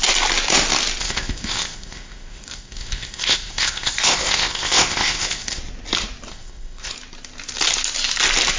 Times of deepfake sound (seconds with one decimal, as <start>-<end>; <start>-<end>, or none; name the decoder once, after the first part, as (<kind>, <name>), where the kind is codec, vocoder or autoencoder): 1.0-5.6 (codec, ZipCodec); 6.3-6.9